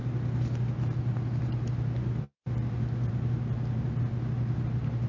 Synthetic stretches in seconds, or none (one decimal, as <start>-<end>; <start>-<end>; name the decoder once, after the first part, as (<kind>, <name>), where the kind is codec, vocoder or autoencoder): none